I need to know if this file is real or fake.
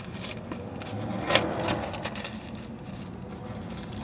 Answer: real